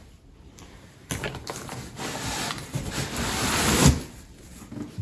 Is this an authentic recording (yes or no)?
yes